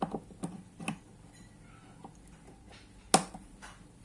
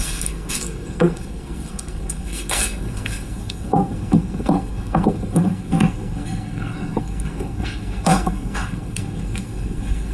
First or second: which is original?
first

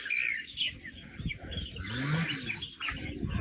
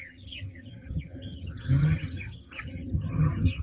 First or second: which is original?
first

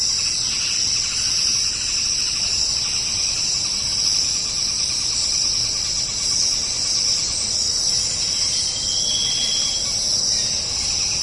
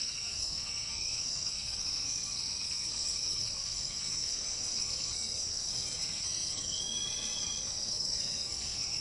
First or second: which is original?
first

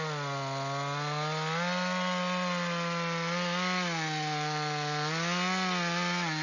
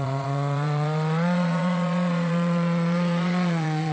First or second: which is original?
first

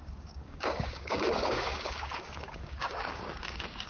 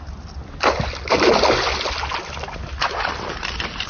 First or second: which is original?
second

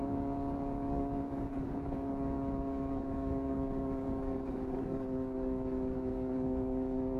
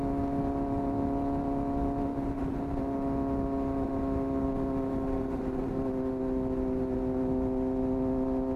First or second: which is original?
second